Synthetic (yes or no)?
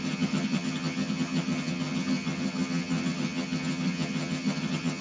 yes